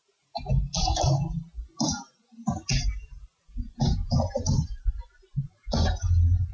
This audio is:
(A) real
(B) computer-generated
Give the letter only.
A